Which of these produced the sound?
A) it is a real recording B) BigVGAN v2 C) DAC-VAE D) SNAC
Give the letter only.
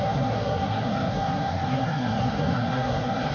D